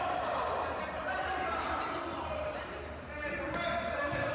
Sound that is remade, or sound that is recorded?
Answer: remade